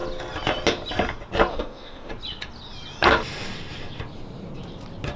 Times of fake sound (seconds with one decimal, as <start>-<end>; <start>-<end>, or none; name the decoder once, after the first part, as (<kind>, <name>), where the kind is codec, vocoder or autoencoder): 1.5-2.1 (autoencoder, DAC-VAE)